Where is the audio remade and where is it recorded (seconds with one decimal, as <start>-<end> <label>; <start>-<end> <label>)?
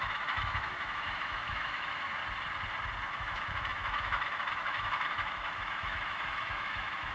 0.0-2.2 remade; 2.2-3.1 recorded; 3.1-7.1 remade